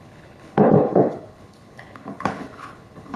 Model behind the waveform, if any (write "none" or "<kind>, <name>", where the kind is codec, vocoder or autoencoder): codec, HILCodec